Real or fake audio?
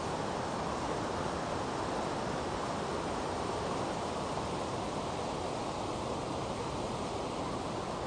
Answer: real